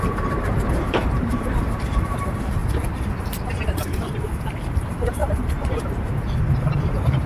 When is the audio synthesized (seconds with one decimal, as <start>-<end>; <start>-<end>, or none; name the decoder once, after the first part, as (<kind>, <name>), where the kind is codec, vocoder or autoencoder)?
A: 0.0-2.6 (vocoder, BigVGAN v2); 3.2-7.3